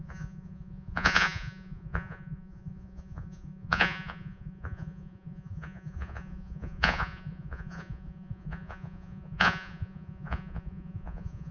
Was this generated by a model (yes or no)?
yes